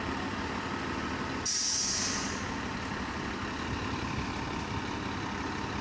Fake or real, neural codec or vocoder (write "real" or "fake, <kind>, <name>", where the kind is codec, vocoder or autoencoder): real